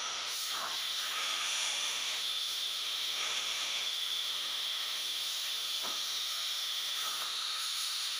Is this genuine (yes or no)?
no